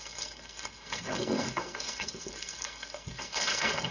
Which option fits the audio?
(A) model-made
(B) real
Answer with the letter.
A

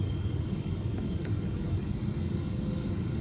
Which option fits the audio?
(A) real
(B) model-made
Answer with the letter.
B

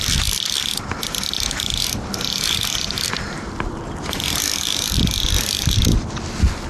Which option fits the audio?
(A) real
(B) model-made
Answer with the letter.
A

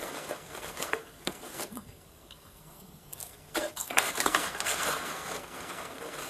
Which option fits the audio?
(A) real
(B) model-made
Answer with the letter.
B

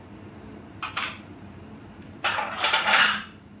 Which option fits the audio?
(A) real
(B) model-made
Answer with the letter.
B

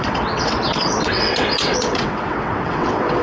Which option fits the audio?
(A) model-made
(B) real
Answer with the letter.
A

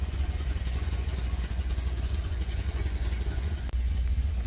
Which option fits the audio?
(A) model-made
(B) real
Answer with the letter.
A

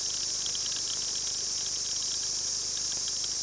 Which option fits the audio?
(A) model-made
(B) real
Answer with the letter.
B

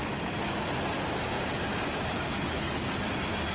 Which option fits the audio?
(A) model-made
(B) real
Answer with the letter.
B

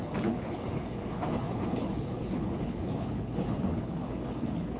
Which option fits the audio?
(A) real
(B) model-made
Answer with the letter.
B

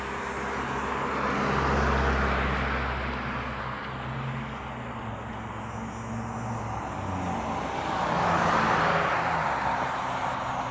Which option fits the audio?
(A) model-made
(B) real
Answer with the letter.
B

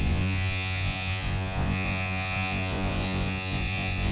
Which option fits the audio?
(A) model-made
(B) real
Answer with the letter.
A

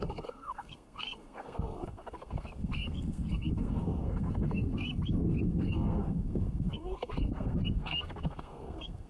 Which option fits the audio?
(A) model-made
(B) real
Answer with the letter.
A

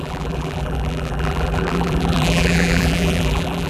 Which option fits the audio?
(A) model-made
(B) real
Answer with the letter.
A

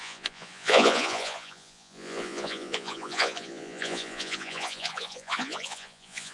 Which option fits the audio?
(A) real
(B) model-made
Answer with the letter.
B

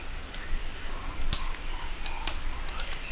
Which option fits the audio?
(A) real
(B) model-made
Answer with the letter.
A